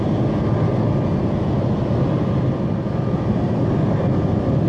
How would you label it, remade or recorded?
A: recorded